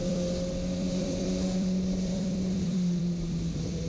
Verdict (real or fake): fake